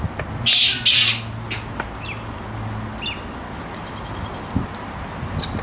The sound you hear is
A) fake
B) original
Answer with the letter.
B